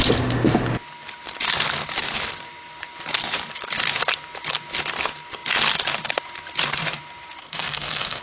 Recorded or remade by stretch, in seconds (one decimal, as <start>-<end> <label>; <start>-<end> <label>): 0.0-7.4 recorded; 7.4-8.2 remade